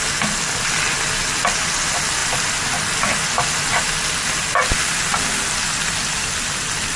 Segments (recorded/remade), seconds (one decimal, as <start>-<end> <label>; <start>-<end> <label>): 0.0-7.0 recorded